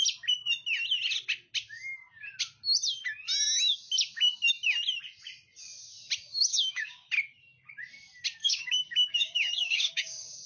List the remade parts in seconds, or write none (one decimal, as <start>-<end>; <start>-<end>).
6.5-7.1; 8.4-10.5